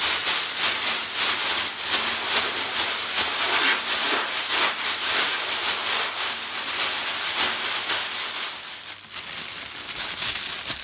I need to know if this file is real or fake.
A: real